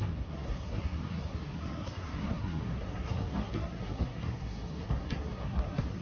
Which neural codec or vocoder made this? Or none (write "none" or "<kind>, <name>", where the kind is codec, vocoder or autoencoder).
codec, SNAC